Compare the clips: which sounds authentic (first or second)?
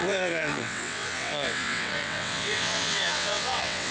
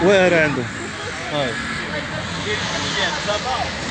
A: second